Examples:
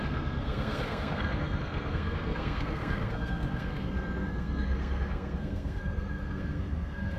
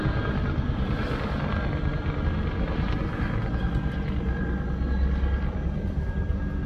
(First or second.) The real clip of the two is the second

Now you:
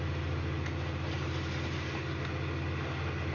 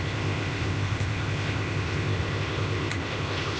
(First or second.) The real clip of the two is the first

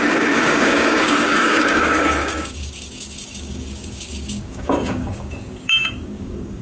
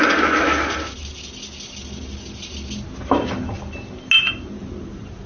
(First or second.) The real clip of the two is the second